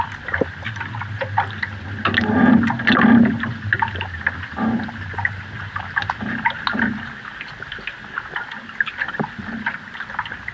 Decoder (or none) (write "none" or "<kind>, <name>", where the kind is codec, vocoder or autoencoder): none